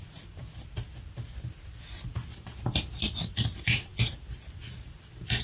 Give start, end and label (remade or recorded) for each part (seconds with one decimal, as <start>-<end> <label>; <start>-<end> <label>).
0.0-5.4 recorded